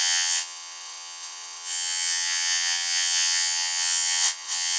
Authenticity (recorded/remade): remade